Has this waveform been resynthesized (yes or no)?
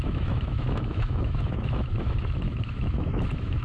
yes